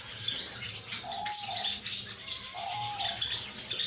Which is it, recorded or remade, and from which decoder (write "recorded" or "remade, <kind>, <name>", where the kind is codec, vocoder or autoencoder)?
recorded